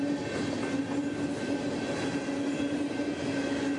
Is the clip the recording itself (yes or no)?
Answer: yes